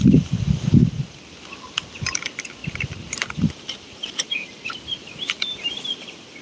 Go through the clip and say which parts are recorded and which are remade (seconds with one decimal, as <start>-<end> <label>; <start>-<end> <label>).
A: 0.0-2.6 recorded; 2.6-6.4 remade